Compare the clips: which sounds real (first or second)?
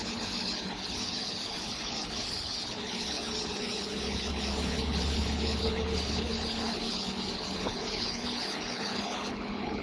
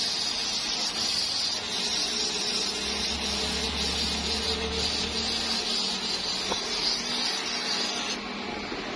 second